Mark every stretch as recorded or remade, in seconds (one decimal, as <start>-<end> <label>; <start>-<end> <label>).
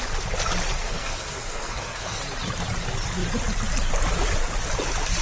0.0-0.8 recorded; 0.8-2.2 remade; 2.2-5.2 recorded